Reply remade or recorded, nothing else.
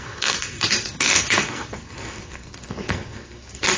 remade